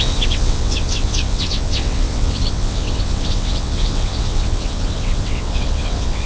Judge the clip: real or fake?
fake